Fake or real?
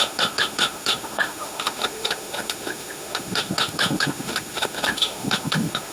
fake